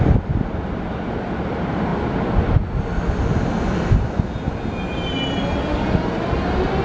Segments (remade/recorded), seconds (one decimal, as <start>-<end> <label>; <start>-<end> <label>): 0.0-6.8 recorded